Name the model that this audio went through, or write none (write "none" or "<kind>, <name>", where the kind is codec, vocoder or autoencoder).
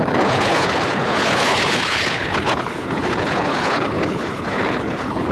codec, HILCodec